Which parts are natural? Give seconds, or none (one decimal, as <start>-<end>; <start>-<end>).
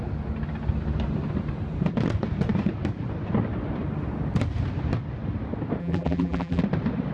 0.0-5.8; 6.6-7.1